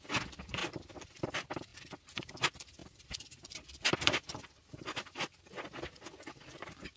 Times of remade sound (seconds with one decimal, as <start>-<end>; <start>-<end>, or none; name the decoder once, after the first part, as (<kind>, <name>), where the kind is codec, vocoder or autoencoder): 0.6-1.2 (vocoder, BigVGAN v2); 2.8-4.7